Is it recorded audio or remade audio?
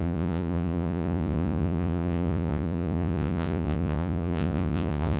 remade